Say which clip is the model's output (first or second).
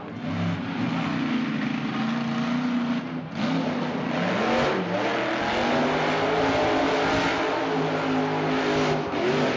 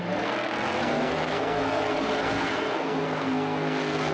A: second